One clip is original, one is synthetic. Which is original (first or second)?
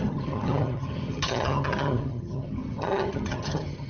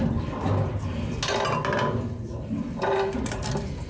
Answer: second